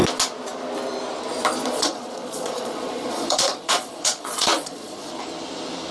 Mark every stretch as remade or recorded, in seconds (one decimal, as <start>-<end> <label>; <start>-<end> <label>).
0.0-1.6 recorded; 1.6-5.1 remade; 5.1-5.9 recorded